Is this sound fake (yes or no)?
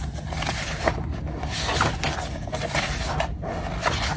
no